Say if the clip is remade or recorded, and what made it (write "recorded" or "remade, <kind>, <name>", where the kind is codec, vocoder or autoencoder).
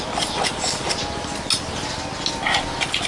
recorded